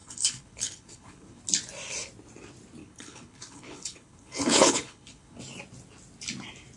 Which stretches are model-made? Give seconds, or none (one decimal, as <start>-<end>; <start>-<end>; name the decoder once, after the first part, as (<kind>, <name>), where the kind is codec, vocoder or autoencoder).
0.0-1.4 (codec, HILCodec); 2.8-5.4